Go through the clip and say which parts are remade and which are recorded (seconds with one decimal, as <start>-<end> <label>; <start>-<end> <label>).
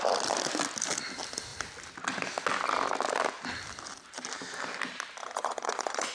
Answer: 0.0-5.2 recorded; 5.2-6.1 remade